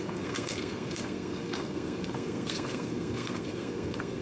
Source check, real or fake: fake